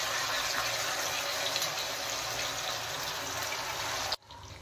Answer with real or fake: real